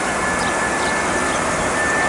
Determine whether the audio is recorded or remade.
recorded